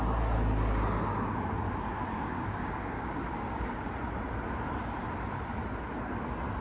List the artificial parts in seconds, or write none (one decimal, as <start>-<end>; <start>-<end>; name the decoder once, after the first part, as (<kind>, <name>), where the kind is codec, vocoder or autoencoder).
2.1-3.6 (codec, DAC)